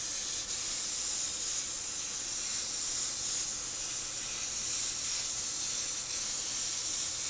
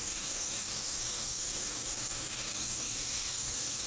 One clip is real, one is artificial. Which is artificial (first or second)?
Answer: second